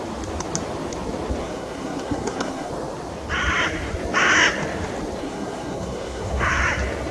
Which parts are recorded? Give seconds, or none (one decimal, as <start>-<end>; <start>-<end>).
0.0-1.4; 2.7-5.2; 6.6-7.1